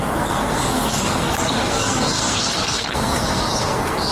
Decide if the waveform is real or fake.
fake